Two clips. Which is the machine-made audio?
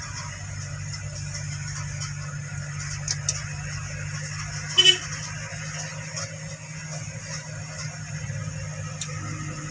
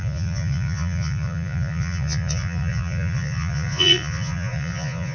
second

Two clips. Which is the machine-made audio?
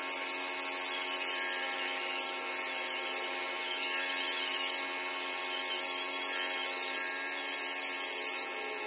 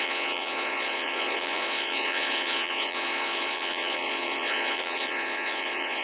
second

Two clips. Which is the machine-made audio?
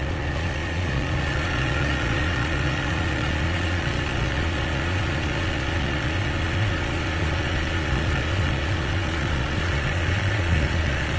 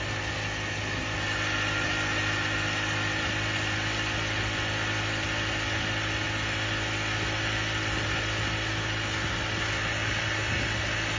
first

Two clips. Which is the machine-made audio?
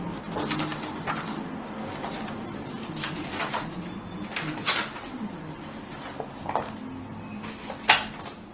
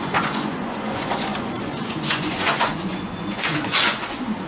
second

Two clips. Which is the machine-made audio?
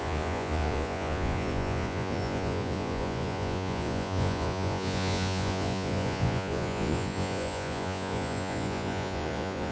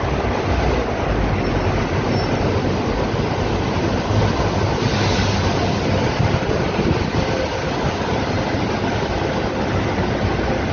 first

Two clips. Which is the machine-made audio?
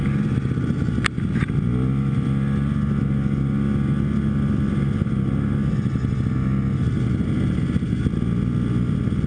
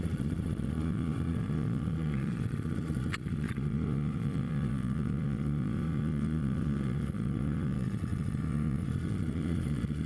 second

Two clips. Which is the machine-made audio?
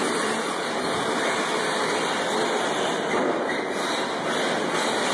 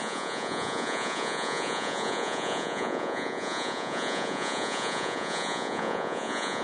second